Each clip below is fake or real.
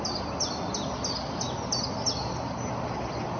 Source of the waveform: real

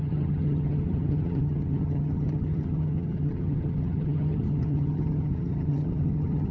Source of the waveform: fake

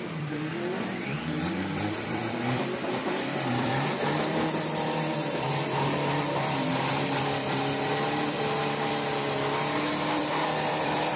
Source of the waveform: fake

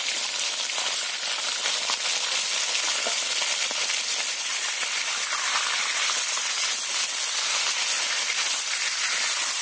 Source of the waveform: real